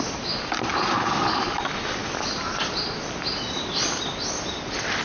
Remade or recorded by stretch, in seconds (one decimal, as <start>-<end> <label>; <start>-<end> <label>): 0.0-0.7 recorded; 0.7-1.5 remade; 1.5-5.0 recorded